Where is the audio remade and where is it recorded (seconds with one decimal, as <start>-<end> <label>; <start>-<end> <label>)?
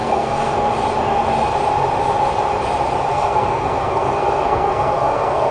0.0-0.7 remade; 0.7-3.1 recorded; 3.1-5.5 remade